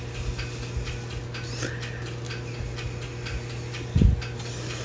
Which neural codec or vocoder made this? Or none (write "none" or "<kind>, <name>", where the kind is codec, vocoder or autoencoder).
none